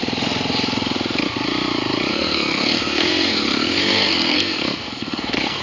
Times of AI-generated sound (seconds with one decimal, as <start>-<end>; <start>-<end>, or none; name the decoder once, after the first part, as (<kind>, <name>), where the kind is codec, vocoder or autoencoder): 2.1-5.6 (codec, SNAC)